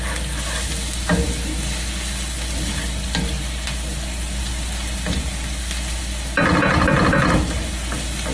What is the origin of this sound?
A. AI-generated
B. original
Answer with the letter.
B